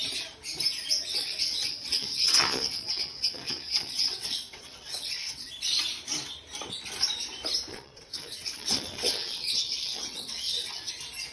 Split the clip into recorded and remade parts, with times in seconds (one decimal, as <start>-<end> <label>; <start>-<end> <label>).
0.0-1.1 recorded; 1.1-5.5 remade; 5.5-7.7 recorded; 7.7-10.9 remade; 10.9-11.3 recorded